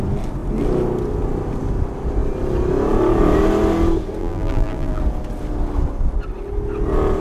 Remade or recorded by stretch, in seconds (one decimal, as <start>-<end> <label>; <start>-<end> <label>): 0.0-4.2 recorded; 4.2-5.0 remade; 5.0-7.2 recorded